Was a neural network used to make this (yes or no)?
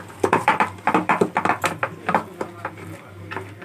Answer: yes